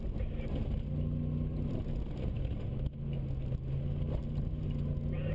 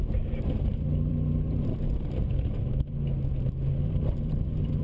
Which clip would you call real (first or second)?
first